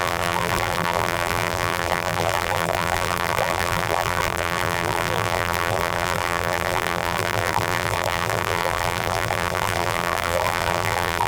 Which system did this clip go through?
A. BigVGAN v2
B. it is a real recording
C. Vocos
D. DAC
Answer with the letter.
A